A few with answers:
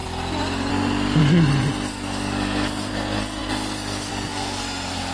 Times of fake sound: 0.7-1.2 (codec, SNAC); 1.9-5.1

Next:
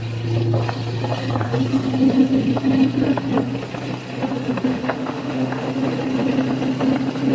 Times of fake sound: 4.7-5.7 (autoencoder, DAC-VAE)

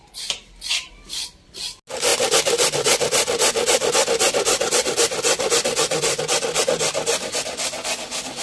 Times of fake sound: 0.0-1.6 (vocoder, BigVGAN v2); 2.1-6.2

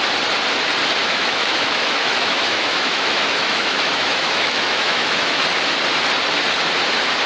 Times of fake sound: 1.0-5.4 (autoencoder, DAC-VAE)

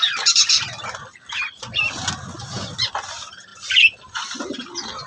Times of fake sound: 3.5-4.4 (vocoder, BigVGAN v2)

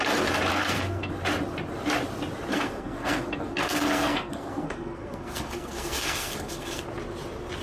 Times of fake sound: 0.5-1.1 (codec, SNAC); 2.5-6.8